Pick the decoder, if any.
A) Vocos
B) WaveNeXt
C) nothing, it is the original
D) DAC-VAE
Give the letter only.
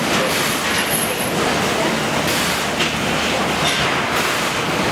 C